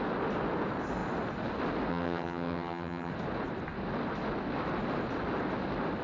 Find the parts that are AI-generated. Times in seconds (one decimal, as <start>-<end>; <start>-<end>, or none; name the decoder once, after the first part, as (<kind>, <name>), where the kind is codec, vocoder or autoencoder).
1.9-3.1 (vocoder, HiFi-GAN)